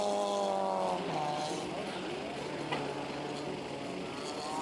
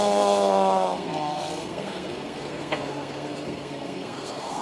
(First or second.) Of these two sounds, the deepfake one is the second